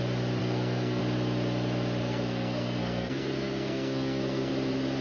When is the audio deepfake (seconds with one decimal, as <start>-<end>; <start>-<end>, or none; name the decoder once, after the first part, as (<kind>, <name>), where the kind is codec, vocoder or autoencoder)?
0.4-1.0 (codec, SNAC); 2.0-4.5